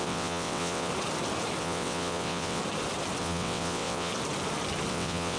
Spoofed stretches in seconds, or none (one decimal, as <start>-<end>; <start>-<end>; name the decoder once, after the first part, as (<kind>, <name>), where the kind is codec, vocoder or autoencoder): 0.0-0.9 (vocoder, WaveNeXt); 1.6-2.6; 3.2-4.1; 4.9-5.4